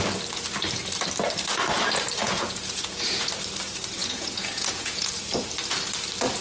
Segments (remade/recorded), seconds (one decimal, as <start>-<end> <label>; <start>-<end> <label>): 0.0-2.2 recorded; 2.2-3.3 remade; 3.3-4.0 recorded; 4.0-5.1 remade; 5.1-6.4 recorded